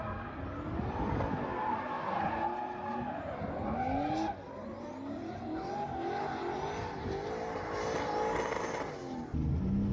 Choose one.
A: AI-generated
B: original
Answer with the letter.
B